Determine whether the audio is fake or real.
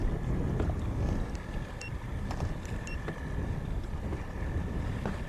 real